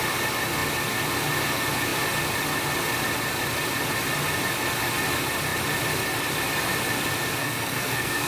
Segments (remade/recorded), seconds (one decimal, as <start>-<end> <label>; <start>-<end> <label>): 0.0-7.4 recorded; 7.4-8.3 remade

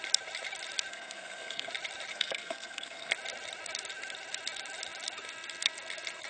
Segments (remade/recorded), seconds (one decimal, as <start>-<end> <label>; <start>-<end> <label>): 0.0-0.9 recorded; 0.9-1.7 remade; 1.7-2.1 recorded; 2.1-3.1 remade; 3.1-6.3 recorded

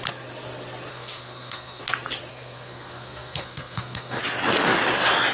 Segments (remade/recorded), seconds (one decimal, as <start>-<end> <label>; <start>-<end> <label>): 0.0-0.9 recorded; 0.9-1.8 remade; 1.8-2.3 recorded; 2.3-4.2 remade; 4.2-5.3 recorded

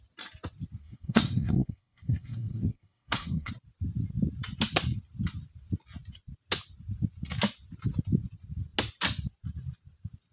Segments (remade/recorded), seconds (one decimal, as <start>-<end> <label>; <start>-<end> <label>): 0.0-0.8 recorded; 0.8-3.5 remade; 3.5-10.3 recorded

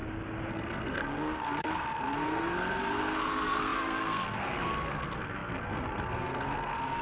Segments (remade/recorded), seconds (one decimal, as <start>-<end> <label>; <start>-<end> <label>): 0.0-0.5 recorded; 0.5-7.0 remade

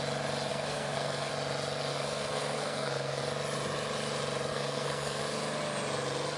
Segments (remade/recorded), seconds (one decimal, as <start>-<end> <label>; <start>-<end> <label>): 0.0-0.5 recorded; 0.5-1.3 remade; 1.3-1.9 recorded; 1.9-3.2 remade; 3.2-4.5 recorded; 4.5-5.2 remade; 5.2-6.4 recorded